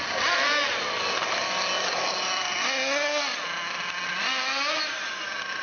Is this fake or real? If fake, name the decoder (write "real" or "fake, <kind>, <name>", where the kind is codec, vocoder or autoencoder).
real